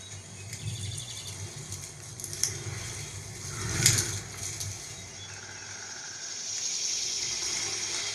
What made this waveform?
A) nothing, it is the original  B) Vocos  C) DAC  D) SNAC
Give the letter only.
A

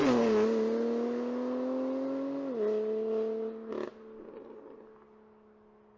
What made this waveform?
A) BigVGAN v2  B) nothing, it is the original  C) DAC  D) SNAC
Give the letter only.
B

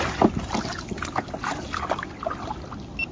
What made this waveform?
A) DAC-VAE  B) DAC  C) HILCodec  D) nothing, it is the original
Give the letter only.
D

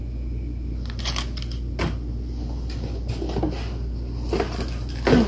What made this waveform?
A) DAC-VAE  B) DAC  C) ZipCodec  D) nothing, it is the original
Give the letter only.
D